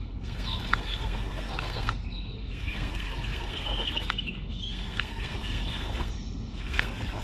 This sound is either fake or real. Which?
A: fake